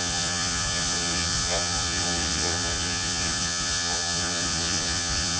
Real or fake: fake